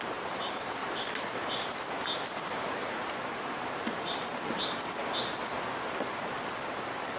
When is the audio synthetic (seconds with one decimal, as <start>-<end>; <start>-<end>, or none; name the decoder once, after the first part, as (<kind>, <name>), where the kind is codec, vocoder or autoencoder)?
0.0-0.8 (vocoder, BigVGAN v2); 3.2-5.0; 5.7-7.2